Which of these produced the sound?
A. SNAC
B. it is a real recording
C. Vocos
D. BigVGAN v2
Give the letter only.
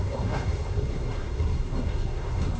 A